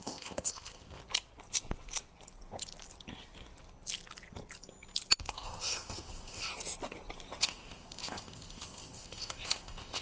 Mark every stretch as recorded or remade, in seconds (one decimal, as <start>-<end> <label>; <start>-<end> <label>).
0.0-1.0 remade; 1.0-5.2 recorded; 5.2-6.5 remade; 6.5-7.4 recorded; 7.4-10.0 remade